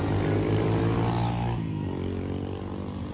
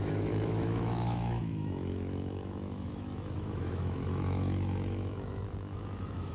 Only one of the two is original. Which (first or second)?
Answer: first